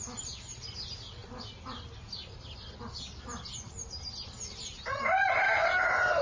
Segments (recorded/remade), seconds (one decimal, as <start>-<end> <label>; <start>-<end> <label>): 0.0-6.2 recorded